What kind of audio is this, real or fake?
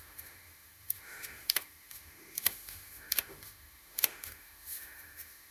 fake